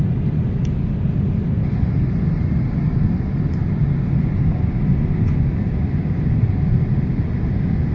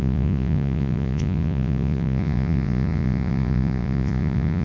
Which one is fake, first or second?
second